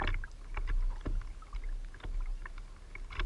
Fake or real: real